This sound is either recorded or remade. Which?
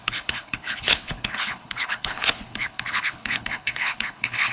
remade